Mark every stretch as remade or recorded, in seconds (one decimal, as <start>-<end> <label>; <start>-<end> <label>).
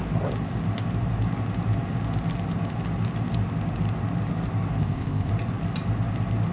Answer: 0.0-4.8 recorded; 4.8-5.3 remade; 5.3-6.5 recorded